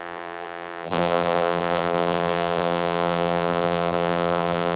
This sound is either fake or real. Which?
fake